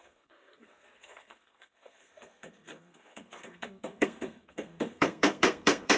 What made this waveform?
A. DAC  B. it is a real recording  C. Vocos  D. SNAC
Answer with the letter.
D